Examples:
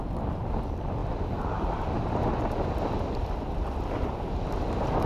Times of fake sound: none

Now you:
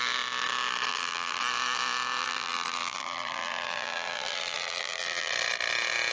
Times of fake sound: 0.9-1.4 (vocoder, BigVGAN v2); 2.2-5.3

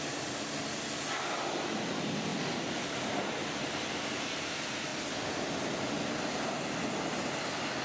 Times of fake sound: 2.3-3.6 (vocoder, BigVGAN v2)

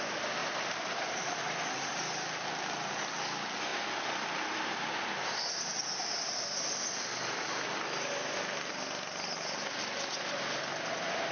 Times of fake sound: 0.4-1.4 (vocoder, BigVGAN v2); 1.9-2.5

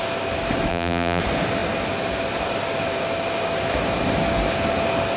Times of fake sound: 0.7-1.2 (vocoder, BigVGAN v2)

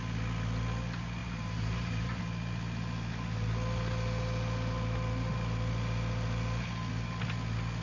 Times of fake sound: 1.2-2.2 (vocoder, BigVGAN v2)

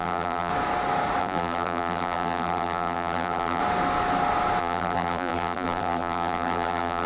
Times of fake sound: 0.0-0.5 (vocoder, BigVGAN v2); 1.2-3.6; 4.6-7.1